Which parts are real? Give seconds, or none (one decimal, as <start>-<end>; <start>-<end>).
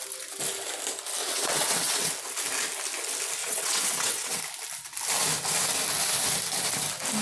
0.0-1.2; 2.1-3.4; 4.4-7.2